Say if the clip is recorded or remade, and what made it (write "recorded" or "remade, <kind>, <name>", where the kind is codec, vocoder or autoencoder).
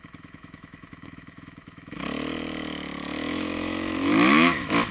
remade, autoencoder, DAC-VAE